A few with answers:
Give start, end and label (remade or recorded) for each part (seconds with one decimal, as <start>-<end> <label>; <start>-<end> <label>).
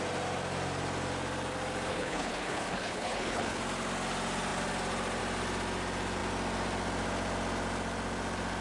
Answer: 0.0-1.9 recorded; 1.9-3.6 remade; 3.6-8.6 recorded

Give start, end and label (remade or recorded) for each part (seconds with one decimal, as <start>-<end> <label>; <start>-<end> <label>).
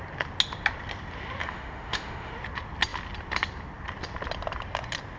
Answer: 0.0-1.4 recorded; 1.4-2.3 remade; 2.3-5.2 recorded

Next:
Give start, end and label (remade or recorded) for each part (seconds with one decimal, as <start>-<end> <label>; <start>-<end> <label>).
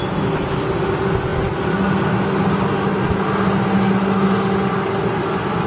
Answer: 0.0-5.7 recorded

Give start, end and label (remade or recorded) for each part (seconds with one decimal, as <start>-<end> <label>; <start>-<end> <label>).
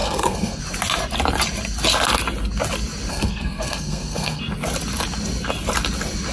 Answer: 0.0-0.6 remade; 0.6-3.1 recorded; 3.1-4.4 remade; 4.4-6.3 recorded